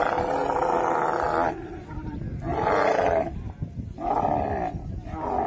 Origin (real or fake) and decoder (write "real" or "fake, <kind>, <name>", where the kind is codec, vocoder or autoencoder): real